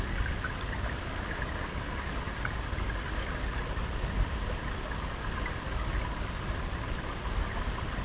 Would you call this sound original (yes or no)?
yes